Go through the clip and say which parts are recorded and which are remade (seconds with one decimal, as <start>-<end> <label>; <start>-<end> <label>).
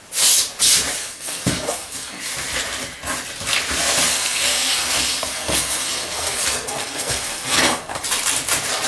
0.0-1.0 recorded; 1.0-2.2 remade; 2.2-4.1 recorded; 4.1-8.0 remade; 8.0-8.9 recorded